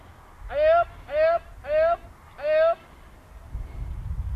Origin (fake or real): real